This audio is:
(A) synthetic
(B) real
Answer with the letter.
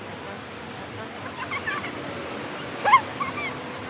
B